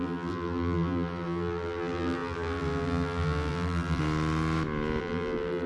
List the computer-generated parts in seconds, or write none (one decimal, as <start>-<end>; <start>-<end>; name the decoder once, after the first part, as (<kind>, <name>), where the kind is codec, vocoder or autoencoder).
0.0-4.0 (vocoder, BigVGAN v2); 5.0-5.7